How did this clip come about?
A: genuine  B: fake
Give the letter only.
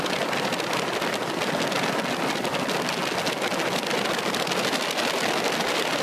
A